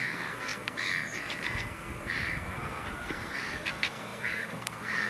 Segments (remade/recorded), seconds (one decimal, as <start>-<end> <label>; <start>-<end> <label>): 0.0-5.1 remade